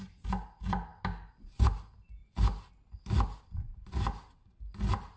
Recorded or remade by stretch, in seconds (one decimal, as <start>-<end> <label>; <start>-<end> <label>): 0.0-5.2 recorded